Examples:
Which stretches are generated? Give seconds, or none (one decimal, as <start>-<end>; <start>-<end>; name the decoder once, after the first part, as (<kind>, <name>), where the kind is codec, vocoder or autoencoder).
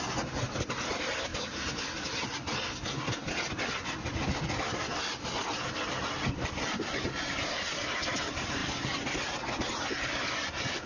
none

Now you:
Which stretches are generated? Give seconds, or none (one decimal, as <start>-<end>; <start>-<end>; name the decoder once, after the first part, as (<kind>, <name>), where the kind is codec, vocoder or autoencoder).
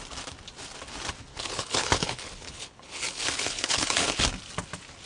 1.3-4.2 (codec, HILCodec)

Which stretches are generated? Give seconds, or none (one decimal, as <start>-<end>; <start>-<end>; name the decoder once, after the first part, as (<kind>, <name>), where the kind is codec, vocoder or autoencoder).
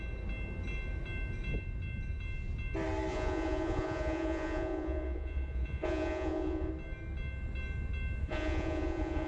3.1-6.7 (vocoder, Vocos); 8.2-9.3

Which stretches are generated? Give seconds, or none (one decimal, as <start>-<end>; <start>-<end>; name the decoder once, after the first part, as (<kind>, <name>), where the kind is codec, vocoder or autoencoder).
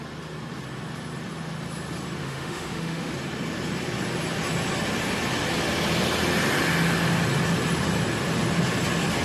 2.2-3.1 (autoencoder, DAC-VAE)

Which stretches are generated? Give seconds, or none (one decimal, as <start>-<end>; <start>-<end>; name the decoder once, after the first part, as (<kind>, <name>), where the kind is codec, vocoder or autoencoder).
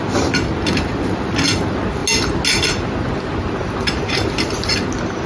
none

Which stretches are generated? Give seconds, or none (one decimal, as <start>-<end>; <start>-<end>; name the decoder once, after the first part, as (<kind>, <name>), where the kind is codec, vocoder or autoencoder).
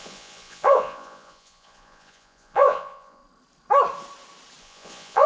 0.0-3.2 (vocoder, Vocos); 4.6-5.3